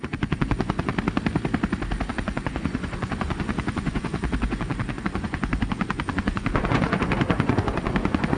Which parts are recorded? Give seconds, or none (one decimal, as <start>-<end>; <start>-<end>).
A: 0.9-2.1